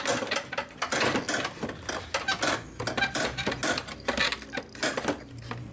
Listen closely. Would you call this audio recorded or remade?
recorded